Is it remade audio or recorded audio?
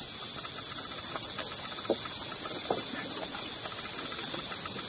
recorded